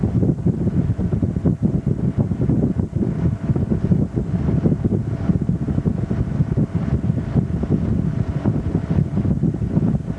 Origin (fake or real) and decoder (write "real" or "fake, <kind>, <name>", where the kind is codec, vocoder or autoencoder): real